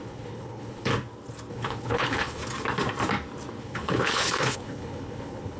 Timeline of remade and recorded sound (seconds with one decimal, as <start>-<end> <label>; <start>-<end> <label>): 0.0-0.9 remade; 0.9-1.5 recorded; 1.5-2.4 remade; 2.4-3.6 recorded; 3.6-5.6 remade